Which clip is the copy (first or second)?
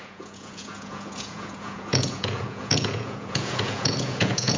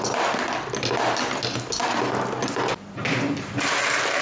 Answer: first